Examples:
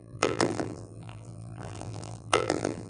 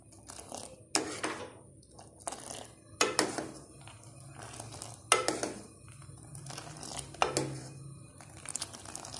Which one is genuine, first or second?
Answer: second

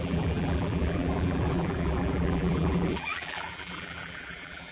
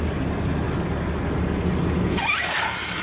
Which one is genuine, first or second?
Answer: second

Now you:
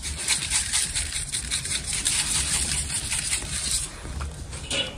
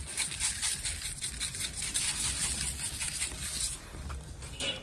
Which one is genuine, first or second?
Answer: second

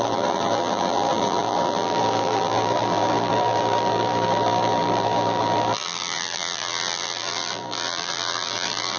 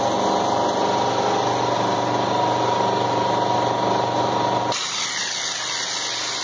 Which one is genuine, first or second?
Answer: second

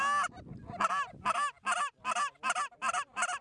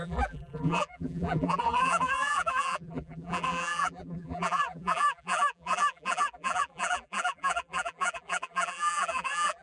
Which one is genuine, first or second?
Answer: first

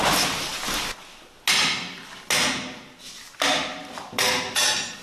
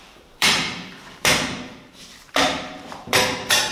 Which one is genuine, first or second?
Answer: first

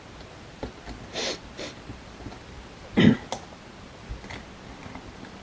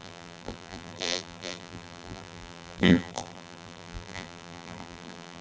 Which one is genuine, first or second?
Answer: first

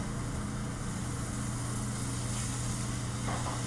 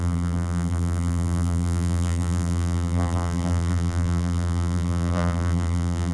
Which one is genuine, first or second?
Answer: first